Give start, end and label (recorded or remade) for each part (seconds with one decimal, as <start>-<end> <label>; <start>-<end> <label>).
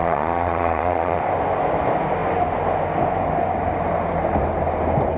0.0-1.2 remade; 1.2-5.2 recorded